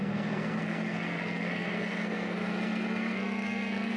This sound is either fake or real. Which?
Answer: fake